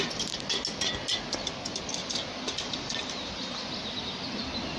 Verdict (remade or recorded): recorded